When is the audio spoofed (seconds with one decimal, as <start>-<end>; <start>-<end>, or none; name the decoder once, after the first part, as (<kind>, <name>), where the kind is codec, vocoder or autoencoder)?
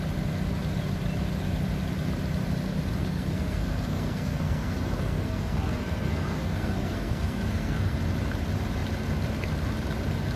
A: 3.0-8.0 (codec, SNAC)